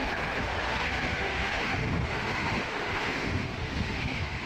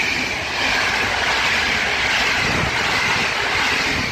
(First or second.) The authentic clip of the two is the second